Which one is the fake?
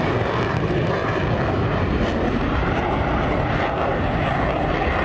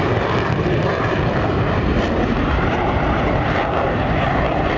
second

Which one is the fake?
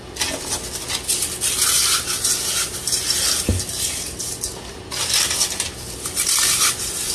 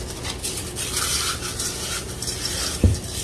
second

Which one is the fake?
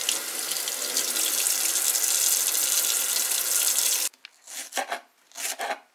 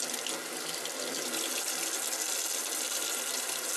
second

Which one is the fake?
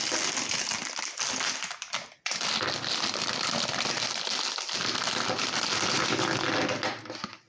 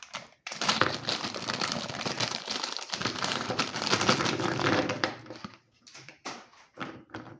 second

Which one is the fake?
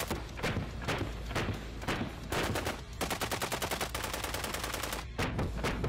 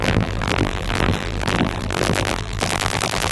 second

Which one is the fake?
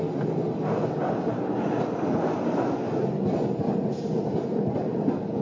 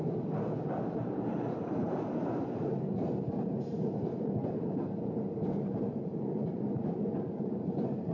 second